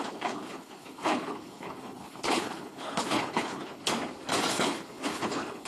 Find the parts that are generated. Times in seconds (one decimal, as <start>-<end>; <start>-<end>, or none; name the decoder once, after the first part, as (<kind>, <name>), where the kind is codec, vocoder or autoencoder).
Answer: 0.0-3.8 (codec, HILCodec); 4.5-5.7